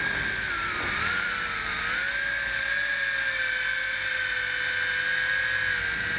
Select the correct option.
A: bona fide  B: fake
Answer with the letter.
A